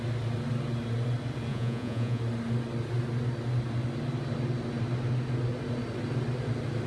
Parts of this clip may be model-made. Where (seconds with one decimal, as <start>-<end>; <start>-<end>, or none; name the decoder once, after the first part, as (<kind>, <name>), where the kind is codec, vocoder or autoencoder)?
1.5-2.2 (vocoder, Vocos)